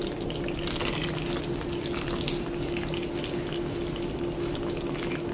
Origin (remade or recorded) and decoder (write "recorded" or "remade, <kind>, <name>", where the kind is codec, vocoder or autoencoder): recorded